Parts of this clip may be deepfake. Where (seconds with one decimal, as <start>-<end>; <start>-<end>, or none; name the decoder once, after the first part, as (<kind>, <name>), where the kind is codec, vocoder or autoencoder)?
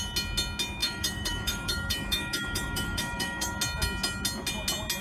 0.8-3.5 (autoencoder, DAC-VAE)